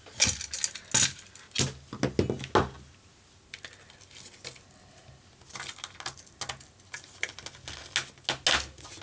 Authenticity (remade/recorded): recorded